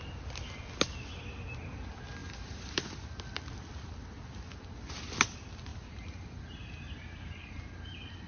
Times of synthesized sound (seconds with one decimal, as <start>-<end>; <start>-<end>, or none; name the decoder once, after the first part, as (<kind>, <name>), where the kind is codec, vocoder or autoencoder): 2.2-2.9 (vocoder, BigVGAN v2); 5.7-7.6